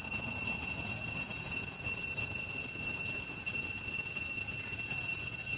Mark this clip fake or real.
fake